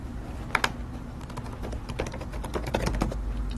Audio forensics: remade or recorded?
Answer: recorded